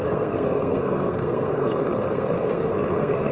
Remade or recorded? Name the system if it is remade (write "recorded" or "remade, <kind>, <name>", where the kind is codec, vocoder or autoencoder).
remade, codec, SNAC